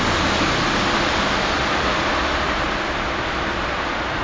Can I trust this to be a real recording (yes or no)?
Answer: yes